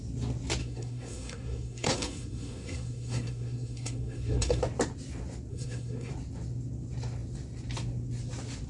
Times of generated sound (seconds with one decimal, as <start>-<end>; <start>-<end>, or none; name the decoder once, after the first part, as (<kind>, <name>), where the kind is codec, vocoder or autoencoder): 0.6-4.6 (codec, SNAC); 5.5-6.1